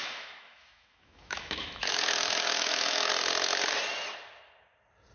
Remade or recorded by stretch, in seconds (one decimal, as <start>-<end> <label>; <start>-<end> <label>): 0.0-3.1 remade; 3.1-5.1 recorded